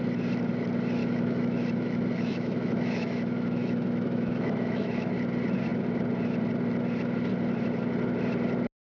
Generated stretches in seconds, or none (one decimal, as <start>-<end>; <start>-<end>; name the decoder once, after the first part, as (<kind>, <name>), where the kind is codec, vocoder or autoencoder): 1.0-5.1 (autoencoder, DAC-VAE)